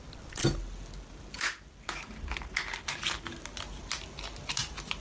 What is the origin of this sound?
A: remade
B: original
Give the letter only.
B